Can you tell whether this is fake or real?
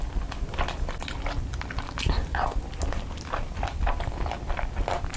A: real